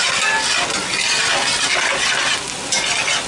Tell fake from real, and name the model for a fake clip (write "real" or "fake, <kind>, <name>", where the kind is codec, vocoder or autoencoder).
real